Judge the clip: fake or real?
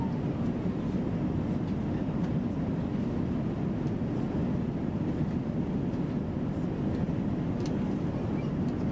real